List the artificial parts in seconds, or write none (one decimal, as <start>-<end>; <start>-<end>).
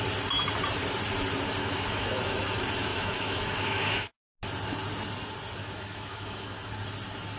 1.6-2.2; 2.9-4.3; 5.6-6.7